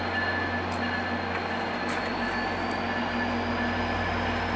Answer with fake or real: real